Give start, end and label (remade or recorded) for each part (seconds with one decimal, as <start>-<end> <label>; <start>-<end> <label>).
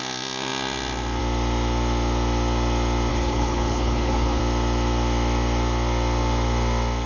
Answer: 0.0-3.1 recorded; 3.1-4.4 remade; 4.4-7.1 recorded